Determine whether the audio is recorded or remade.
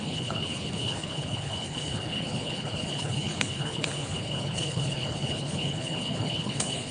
remade